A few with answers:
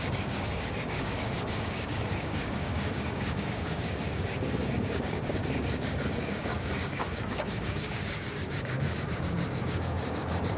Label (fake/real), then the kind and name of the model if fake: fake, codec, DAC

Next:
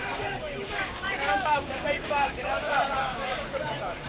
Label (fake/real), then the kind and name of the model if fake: fake, codec, DAC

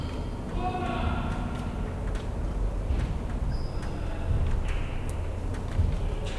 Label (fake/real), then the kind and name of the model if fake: real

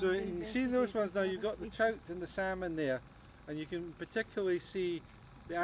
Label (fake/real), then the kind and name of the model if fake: real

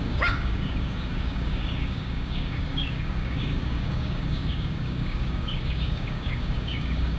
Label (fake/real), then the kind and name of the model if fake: fake, codec, DAC